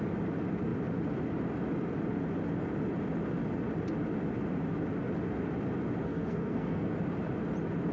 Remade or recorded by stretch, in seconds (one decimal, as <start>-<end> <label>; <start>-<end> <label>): 0.0-6.0 recorded; 6.0-6.9 remade; 6.9-7.9 recorded